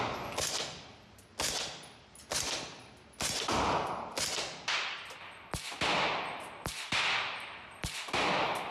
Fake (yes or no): no